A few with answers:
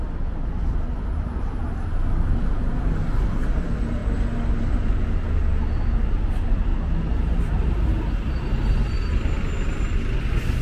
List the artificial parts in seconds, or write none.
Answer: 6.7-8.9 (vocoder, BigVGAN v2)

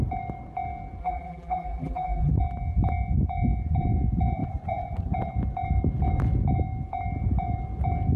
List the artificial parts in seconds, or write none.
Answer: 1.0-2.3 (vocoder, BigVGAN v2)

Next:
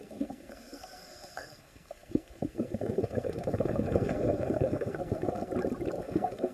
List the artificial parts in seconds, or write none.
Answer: 0.0-5.5 (codec, SNAC); 6.0-6.5

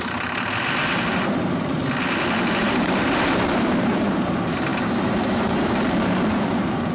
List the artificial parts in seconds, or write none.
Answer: 0.0-1.8 (vocoder, BigVGAN v2); 2.6-6.9